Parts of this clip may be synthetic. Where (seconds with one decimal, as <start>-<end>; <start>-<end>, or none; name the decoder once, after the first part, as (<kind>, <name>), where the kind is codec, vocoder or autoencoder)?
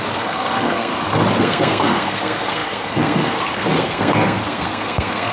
0.0-0.9 (codec, SNAC); 1.4-5.3